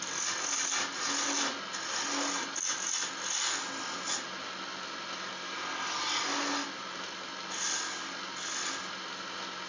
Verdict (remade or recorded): recorded